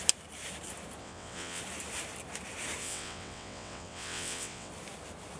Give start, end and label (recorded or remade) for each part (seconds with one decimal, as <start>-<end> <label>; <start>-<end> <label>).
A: 0.0-1.0 recorded; 1.0-1.6 remade; 1.6-2.8 recorded; 2.8-4.7 remade; 4.7-5.4 recorded

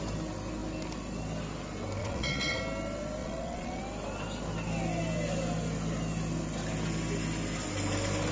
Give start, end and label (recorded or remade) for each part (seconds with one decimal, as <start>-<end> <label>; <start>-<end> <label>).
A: 0.0-2.0 recorded; 2.0-2.6 remade; 2.6-3.2 recorded; 3.2-3.8 remade; 3.8-8.3 recorded

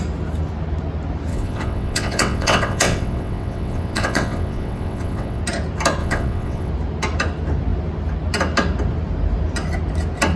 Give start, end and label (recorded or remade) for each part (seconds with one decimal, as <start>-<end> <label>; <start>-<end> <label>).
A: 0.0-1.3 recorded; 1.3-5.4 remade; 5.4-6.0 recorded; 6.0-6.7 remade; 6.7-10.4 recorded